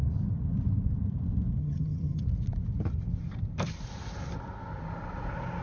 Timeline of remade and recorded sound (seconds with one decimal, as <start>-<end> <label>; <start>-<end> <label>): 0.0-1.6 recorded; 1.6-2.2 remade; 2.2-5.6 recorded